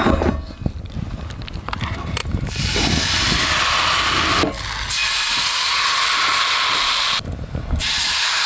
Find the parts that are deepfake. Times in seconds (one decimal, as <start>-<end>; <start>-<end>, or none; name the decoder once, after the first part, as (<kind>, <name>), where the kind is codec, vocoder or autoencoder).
none